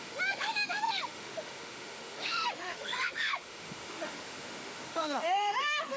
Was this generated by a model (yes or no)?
yes